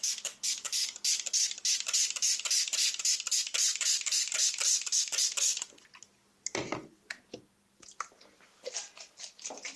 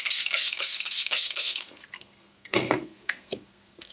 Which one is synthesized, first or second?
second